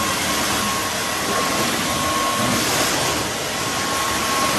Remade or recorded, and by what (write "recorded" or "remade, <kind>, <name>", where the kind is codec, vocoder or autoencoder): recorded